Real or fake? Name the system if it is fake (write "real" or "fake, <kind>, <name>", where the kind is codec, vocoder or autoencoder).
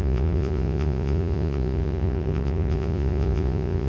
fake, vocoder, Vocos